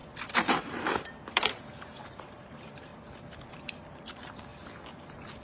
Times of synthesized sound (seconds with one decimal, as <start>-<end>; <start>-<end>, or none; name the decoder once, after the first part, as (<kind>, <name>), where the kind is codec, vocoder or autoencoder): 0.0-2.9 (vocoder, BigVGAN v2); 3.5-4.5